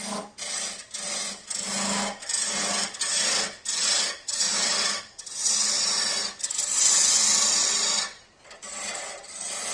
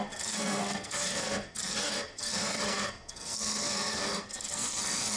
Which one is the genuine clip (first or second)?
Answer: first